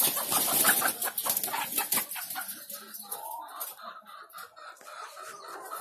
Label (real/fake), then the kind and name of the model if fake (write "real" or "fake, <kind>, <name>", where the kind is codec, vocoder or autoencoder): real